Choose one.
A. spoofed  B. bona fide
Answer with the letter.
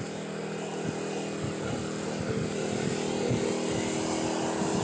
B